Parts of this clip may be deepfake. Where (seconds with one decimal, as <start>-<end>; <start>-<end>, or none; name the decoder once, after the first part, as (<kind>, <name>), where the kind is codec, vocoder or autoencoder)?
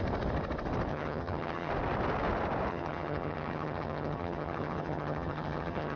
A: 0.9-1.7 (vocoder, HiFi-GAN); 2.7-6.0